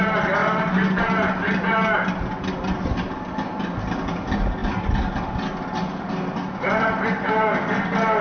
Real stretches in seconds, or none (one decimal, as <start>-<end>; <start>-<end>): 0.0-8.2